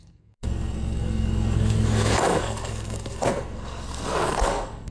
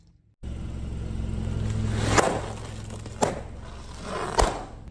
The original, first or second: second